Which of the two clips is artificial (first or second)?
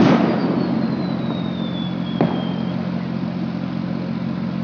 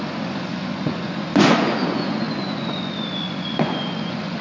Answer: second